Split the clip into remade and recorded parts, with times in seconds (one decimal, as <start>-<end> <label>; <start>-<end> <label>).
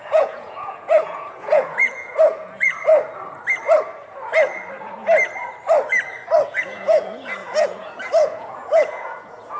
0.0-2.9 remade; 2.9-6.6 recorded; 6.6-9.6 remade